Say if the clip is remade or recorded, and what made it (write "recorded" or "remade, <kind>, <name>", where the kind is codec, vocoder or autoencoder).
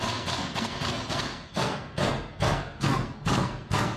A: remade, codec, SNAC